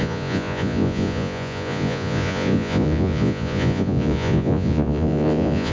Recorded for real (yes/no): no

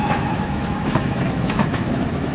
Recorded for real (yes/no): no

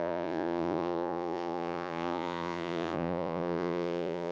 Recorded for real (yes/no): no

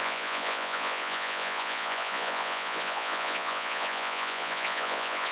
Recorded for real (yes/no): no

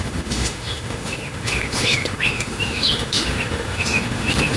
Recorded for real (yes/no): no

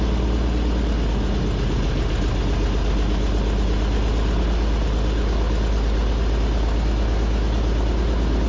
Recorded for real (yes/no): yes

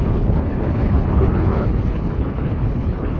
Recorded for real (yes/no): no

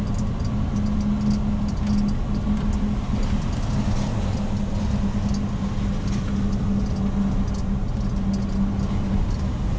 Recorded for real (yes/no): yes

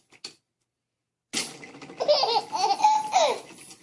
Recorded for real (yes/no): yes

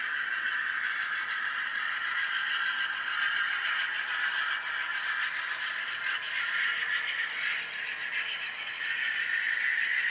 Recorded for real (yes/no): yes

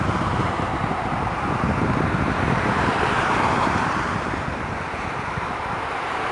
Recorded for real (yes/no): no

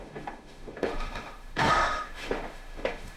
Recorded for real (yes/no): no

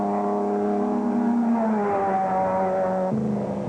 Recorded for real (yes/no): yes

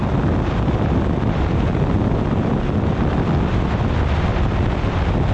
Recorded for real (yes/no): no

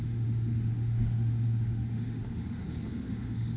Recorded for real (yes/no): no